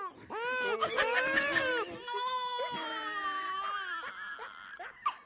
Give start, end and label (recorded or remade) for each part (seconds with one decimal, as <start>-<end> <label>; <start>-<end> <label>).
0.0-5.3 recorded